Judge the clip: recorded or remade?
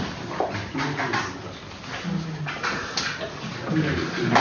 recorded